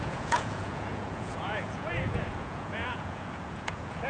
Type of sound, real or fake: fake